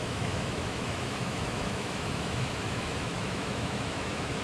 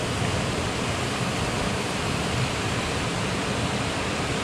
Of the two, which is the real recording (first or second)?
second